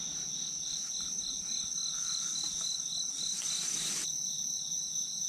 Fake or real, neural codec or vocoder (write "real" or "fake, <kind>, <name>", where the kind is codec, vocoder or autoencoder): real